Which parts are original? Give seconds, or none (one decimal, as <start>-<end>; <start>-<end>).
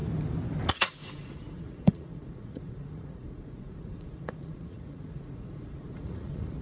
0.0-0.7